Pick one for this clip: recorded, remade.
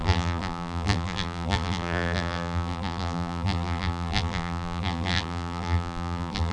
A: remade